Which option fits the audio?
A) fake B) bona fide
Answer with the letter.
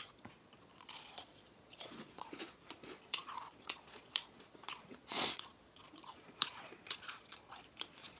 A